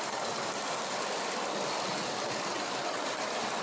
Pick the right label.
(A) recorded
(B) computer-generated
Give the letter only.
A